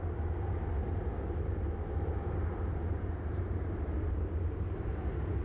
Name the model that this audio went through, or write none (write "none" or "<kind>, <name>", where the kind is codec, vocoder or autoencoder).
none